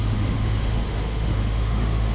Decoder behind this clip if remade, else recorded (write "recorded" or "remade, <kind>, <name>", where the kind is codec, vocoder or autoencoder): remade, autoencoder, DAC-VAE